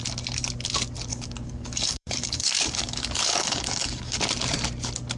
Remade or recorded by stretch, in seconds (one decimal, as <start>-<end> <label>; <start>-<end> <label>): 0.0-1.1 recorded; 1.1-4.2 remade; 4.2-5.2 recorded